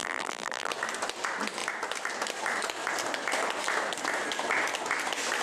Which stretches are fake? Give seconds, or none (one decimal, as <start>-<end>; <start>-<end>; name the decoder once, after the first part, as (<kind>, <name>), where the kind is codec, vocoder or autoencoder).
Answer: 0.0-0.7 (vocoder, BigVGAN v2)